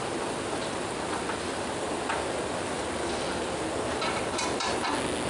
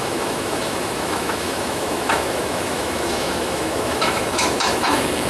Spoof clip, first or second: second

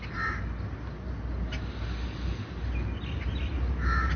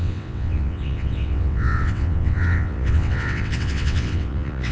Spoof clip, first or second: second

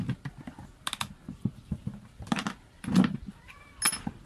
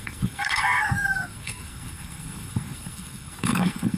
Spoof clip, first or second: second